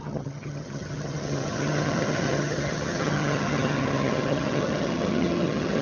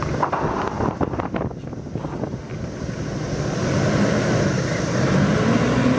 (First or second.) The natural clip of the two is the second